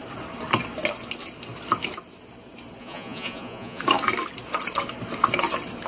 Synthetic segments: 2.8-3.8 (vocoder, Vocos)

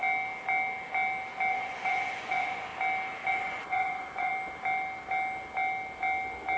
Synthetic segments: 1.5-2.7 (vocoder, Vocos); 3.3-4.3